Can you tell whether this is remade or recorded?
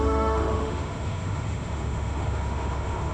remade